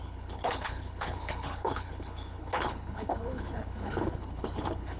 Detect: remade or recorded remade